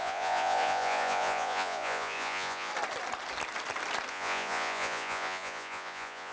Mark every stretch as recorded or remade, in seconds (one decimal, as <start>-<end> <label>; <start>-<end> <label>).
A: 0.0-2.7 remade; 2.7-4.1 recorded; 4.1-6.3 remade

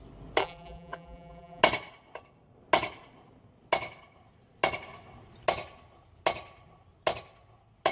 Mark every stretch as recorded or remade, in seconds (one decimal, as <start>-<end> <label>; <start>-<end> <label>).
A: 0.0-0.4 recorded; 0.4-1.6 remade; 1.6-7.9 recorded

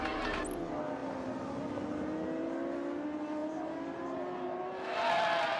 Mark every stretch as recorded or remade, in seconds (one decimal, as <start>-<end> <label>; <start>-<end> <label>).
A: 0.0-5.6 recorded

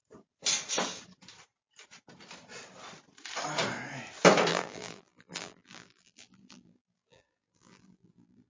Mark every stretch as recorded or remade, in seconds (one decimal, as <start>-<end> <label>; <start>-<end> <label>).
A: 0.0-4.5 recorded; 4.5-8.5 remade

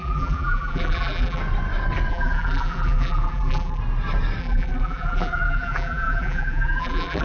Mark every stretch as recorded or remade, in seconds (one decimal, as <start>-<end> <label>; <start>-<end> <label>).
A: 0.0-1.4 remade; 1.4-2.1 recorded; 2.1-3.8 remade; 3.8-4.4 recorded; 4.4-7.2 remade

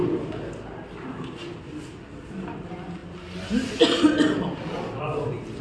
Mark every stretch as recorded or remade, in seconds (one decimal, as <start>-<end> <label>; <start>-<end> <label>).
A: 0.0-5.6 recorded